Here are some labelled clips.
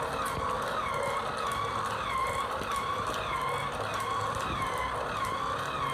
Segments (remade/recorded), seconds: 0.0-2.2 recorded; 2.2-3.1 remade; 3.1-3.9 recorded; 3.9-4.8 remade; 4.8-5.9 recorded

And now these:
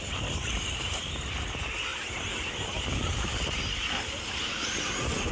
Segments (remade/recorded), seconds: 0.0-1.9 recorded; 1.9-5.3 remade

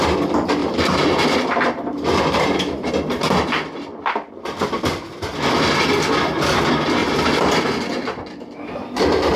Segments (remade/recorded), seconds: 0.0-0.6 recorded; 0.6-2.9 remade; 2.9-7.0 recorded; 7.0-7.6 remade; 7.6-9.4 recorded

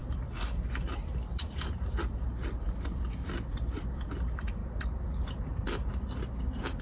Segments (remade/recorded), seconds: 0.0-1.4 recorded; 1.4-4.6 remade; 4.6-6.8 recorded

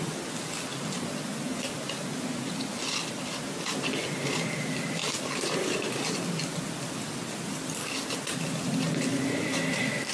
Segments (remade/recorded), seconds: 0.0-0.7 recorded; 0.7-1.5 remade; 1.5-5.0 recorded; 5.0-8.2 remade; 8.2-9.1 recorded; 9.1-10.1 remade

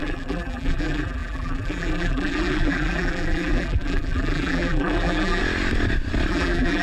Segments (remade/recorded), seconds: 0.0-5.4 remade; 5.4-6.3 recorded; 6.3-6.8 remade